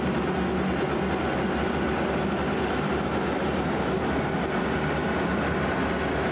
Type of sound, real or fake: real